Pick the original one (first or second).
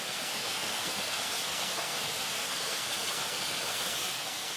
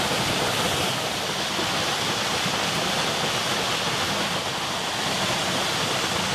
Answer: second